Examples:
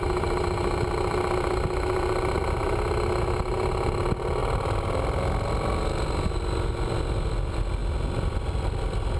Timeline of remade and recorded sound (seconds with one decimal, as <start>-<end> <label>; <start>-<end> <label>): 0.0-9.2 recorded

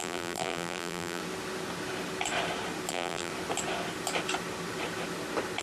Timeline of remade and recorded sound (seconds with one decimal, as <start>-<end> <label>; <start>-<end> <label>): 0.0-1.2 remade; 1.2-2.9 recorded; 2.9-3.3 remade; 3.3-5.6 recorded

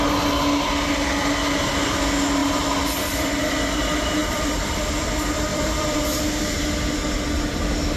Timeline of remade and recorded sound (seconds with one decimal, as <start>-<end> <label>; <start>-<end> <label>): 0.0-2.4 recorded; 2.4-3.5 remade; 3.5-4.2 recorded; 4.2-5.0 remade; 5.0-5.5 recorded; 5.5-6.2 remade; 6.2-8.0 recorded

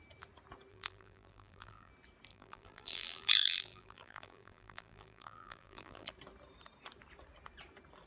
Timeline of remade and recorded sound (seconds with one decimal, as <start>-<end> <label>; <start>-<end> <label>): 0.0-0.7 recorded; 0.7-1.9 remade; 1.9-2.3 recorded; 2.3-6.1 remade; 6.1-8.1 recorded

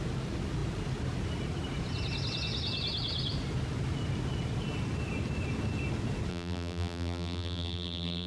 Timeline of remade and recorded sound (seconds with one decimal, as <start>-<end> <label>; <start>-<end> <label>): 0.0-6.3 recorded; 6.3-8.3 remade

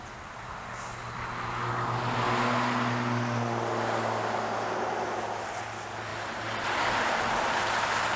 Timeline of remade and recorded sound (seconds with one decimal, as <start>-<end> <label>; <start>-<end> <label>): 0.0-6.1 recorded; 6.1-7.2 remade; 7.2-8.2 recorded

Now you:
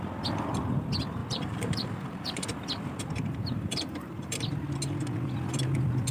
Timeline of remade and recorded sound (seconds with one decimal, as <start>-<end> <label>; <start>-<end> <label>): 0.0-1.2 recorded; 1.2-4.4 remade; 4.4-6.1 recorded